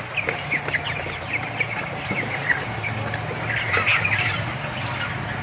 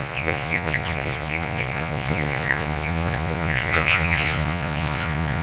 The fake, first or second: second